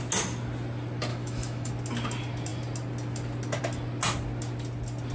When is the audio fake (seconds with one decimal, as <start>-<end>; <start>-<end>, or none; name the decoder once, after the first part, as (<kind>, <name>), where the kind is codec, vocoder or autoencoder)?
1.1-1.7 (autoencoder, DAC-VAE)